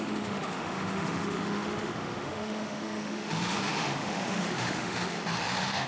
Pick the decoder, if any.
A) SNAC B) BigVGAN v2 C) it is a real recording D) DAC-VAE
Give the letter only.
D